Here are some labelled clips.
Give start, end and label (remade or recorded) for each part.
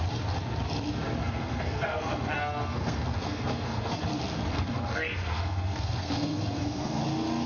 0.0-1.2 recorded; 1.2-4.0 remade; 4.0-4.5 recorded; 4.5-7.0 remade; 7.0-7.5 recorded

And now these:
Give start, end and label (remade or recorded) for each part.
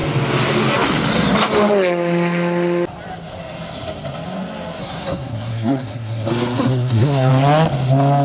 0.0-4.8 recorded; 4.8-7.3 remade; 7.3-8.2 recorded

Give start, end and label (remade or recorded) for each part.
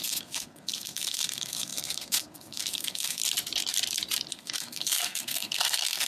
0.0-3.2 remade; 3.2-4.3 recorded; 4.3-6.1 remade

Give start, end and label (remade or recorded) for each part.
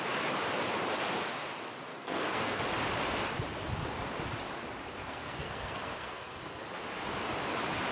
0.0-1.9 recorded; 1.9-2.6 remade; 2.6-5.0 recorded; 5.0-6.4 remade; 6.4-7.9 recorded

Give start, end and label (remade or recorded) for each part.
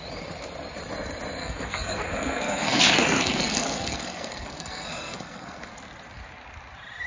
0.0-1.4 recorded; 1.4-5.7 remade; 5.7-7.1 recorded